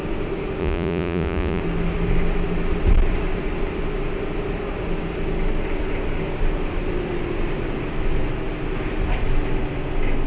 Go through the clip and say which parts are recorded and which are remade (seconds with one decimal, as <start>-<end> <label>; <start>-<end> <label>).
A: 0.0-0.6 recorded; 0.6-1.6 remade; 1.6-10.3 recorded